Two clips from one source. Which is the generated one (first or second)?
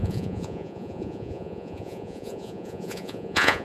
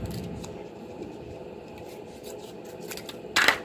first